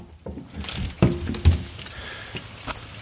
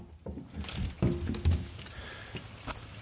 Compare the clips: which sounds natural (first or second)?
second